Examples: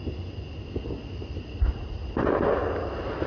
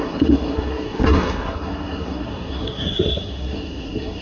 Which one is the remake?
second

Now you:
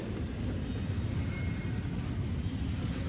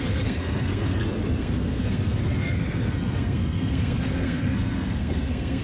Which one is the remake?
second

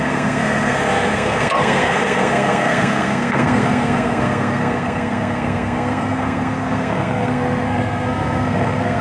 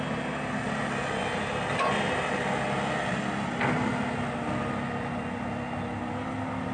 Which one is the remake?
first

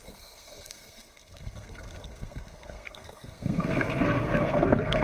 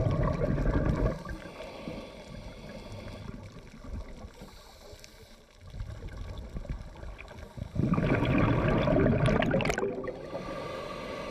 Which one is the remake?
first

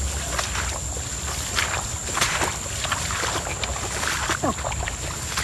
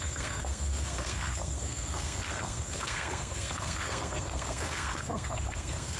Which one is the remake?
second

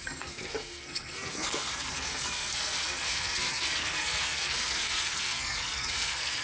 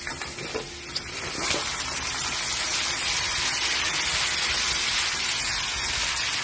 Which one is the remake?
first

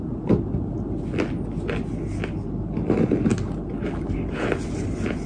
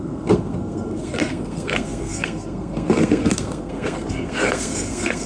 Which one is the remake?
second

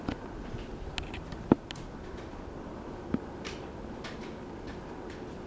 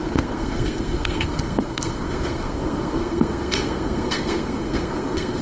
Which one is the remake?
second